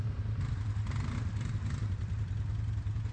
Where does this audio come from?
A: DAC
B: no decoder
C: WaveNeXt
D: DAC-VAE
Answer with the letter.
B